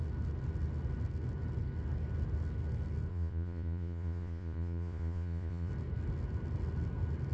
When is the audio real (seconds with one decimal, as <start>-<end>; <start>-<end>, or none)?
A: 0.0-3.1; 5.7-7.3